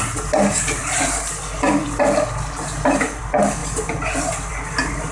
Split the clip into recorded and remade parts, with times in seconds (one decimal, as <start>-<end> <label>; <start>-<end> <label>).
0.0-5.1 recorded